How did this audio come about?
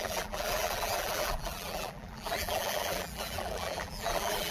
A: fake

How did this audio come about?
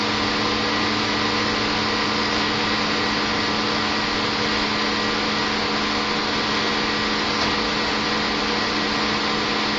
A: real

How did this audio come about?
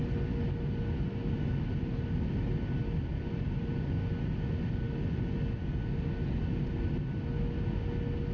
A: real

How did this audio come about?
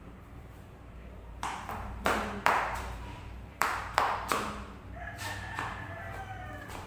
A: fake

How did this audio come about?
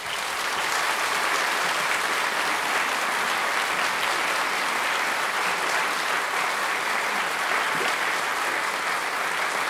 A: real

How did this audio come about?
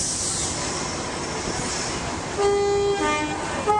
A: real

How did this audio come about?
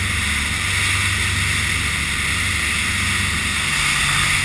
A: real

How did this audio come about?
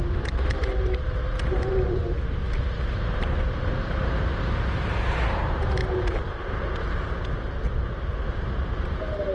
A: fake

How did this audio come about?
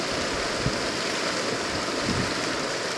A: real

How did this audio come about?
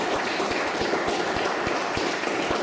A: fake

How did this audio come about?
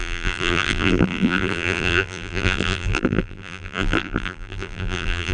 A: fake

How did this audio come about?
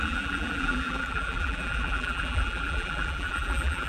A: fake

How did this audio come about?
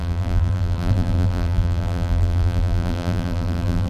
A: fake